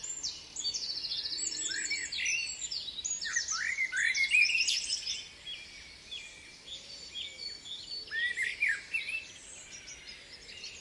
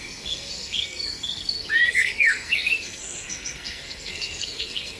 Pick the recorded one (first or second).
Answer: first